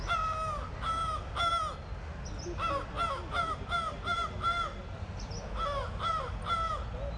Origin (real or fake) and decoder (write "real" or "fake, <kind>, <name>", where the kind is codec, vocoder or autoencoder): real